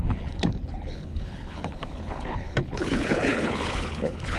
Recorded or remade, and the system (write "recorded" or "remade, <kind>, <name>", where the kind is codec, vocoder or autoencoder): remade, codec, HILCodec